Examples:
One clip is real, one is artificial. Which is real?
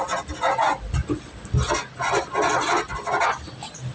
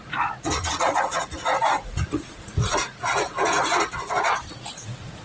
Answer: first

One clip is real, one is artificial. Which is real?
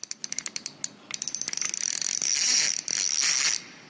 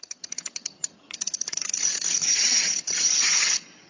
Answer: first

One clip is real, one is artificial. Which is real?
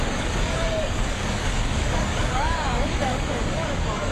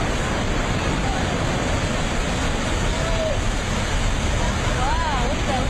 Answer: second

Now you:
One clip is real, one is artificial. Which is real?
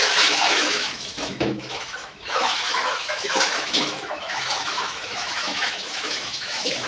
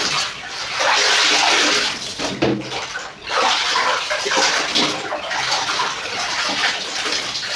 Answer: second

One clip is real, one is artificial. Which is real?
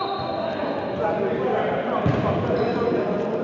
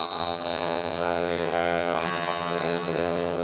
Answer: first